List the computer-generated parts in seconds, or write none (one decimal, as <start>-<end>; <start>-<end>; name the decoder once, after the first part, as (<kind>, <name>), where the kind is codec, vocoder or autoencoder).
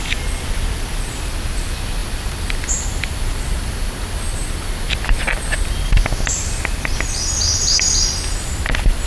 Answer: none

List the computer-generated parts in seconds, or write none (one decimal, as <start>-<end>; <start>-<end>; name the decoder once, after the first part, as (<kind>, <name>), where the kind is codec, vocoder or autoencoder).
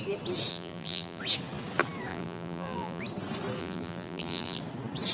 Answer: 0.5-1.2 (vocoder, BigVGAN v2); 2.1-3.0; 3.6-4.6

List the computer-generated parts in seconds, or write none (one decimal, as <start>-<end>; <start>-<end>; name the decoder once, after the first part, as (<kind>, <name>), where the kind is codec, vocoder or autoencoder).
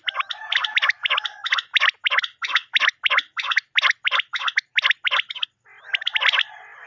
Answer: 1.7-4.5 (vocoder, BigVGAN v2)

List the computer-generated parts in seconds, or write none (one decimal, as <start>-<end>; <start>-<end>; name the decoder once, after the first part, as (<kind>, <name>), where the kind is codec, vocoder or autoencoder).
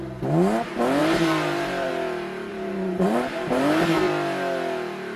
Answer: 1.0-1.9 (vocoder, BigVGAN v2); 2.5-4.0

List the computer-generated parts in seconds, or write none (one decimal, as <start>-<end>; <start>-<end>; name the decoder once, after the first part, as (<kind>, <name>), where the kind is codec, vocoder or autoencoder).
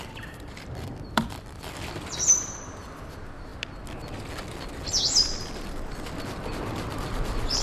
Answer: 0.0-3.5 (vocoder, BigVGAN v2); 5.5-7.6